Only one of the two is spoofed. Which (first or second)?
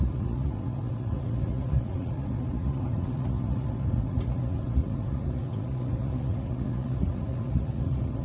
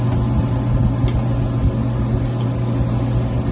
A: first